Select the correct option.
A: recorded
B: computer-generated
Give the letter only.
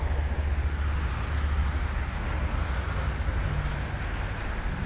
A